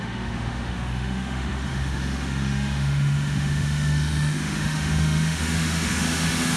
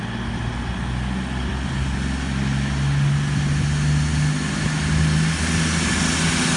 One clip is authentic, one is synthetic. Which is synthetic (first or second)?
first